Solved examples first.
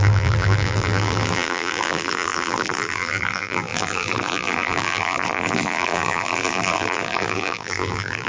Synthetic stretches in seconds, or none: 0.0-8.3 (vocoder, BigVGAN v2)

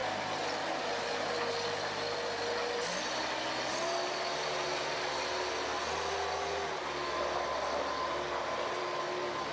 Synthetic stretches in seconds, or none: none